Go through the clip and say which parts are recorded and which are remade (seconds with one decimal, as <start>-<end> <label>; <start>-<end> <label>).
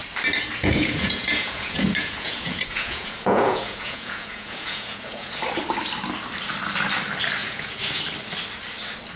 0.0-0.6 recorded; 0.6-5.4 remade; 5.4-7.4 recorded; 7.4-8.0 remade; 8.0-9.2 recorded